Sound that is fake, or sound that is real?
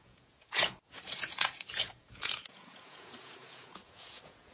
fake